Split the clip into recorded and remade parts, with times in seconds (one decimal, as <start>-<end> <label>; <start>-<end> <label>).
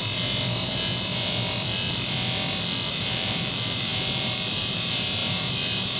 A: 0.0-2.9 recorded; 2.9-6.0 remade